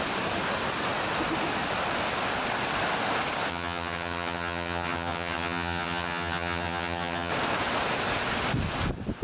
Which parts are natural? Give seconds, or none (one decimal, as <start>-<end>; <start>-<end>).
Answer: 0.0-3.5; 7.3-9.2